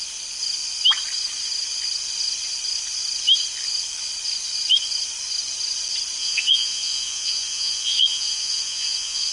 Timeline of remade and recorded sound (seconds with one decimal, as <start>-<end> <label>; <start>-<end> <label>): 0.0-6.2 recorded; 6.2-9.3 remade